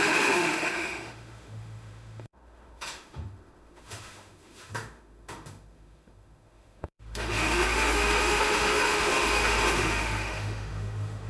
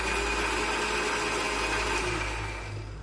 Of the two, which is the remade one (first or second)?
first